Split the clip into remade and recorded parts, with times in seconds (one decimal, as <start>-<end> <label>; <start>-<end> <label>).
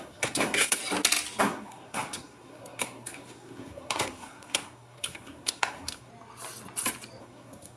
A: 0.0-0.8 remade; 0.8-1.4 recorded; 1.4-6.1 remade; 6.1-7.2 recorded; 7.2-7.8 remade